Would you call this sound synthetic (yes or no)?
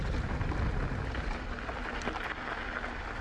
no